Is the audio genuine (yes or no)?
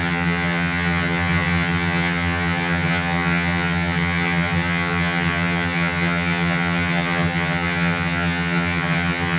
no